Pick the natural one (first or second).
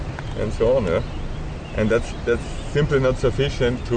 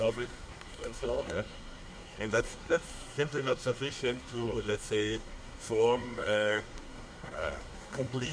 first